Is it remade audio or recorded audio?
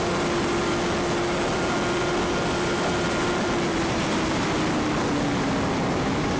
recorded